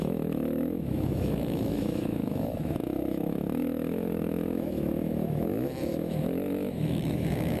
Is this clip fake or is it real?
fake